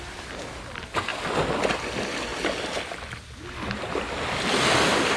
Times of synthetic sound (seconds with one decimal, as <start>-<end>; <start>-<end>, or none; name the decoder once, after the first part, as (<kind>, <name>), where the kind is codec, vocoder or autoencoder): none